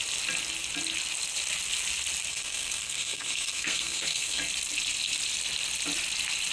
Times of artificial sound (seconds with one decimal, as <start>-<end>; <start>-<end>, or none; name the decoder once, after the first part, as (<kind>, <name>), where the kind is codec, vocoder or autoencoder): 2.3-4.4 (codec, SNAC)